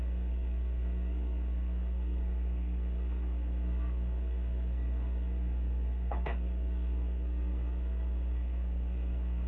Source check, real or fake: fake